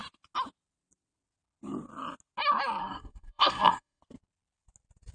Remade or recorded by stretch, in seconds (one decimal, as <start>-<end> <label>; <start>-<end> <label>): 0.0-2.8 recorded; 2.8-4.0 remade; 4.0-5.1 recorded